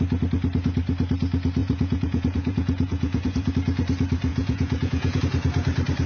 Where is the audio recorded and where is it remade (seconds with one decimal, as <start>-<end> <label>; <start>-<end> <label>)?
0.0-1.6 recorded; 1.6-3.5 remade; 3.5-4.3 recorded; 4.3-5.2 remade; 5.2-6.1 recorded